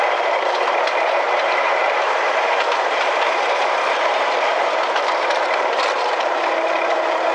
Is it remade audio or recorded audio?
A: remade